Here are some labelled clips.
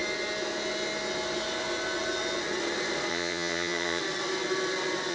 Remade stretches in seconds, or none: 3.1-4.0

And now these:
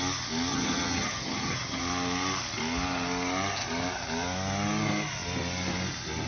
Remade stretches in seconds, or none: 0.5-1.8

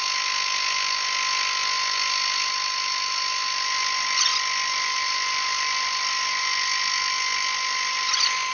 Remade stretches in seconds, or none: none

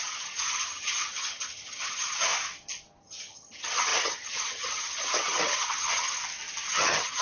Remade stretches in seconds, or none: 0.0-2.3; 3.0-6.2; 6.7-7.2

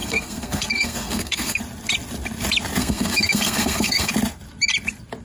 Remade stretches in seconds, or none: 0.0-1.6; 2.8-4.1